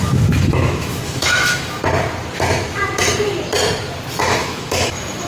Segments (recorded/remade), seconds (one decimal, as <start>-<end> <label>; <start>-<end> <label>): 0.0-1.8 remade; 1.8-4.2 recorded; 4.2-5.3 remade